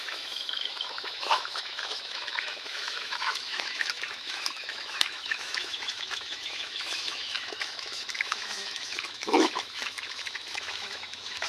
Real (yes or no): no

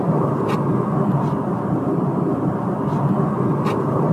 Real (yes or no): yes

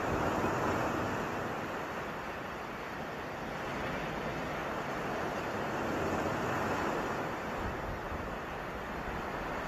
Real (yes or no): yes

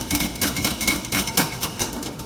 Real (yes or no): no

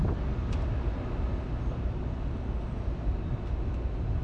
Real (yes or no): yes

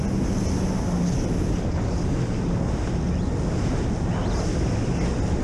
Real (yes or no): yes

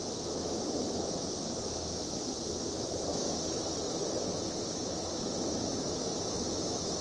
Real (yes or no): no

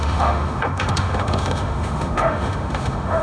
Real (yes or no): no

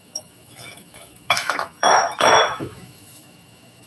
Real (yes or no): no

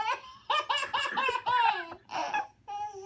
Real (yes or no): yes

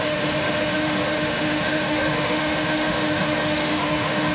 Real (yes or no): no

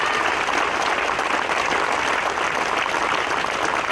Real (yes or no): yes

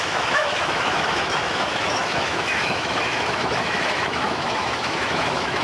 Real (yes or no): no